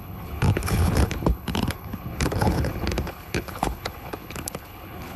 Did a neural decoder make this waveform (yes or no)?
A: yes